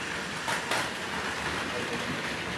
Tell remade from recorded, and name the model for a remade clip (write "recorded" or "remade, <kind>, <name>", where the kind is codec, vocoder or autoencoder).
recorded